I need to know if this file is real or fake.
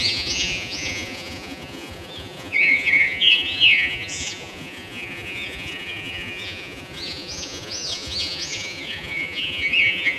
fake